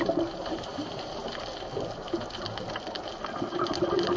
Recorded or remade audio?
recorded